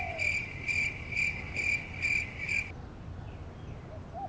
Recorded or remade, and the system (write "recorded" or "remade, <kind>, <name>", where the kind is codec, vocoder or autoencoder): recorded